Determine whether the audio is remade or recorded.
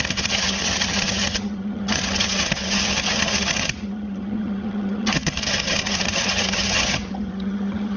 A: remade